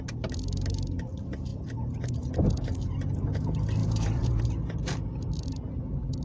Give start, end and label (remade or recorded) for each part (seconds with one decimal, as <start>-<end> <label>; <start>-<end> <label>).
0.0-1.5 recorded; 1.5-2.3 remade; 2.3-3.8 recorded; 3.8-4.4 remade; 4.4-6.2 recorded